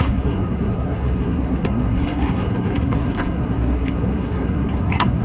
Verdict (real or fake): fake